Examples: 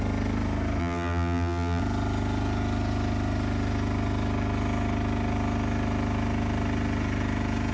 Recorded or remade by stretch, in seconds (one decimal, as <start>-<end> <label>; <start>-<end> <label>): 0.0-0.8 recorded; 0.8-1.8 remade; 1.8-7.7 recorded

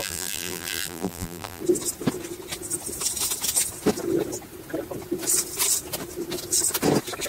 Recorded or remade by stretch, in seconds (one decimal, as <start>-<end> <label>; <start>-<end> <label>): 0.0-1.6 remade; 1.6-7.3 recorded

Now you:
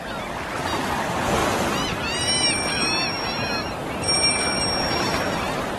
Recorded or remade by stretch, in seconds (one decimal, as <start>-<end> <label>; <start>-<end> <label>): 0.0-5.8 recorded